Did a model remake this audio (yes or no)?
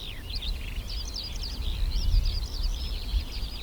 no